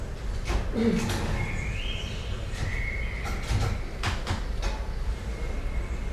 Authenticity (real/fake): real